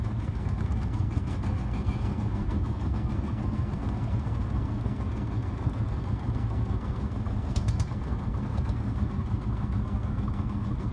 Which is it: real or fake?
fake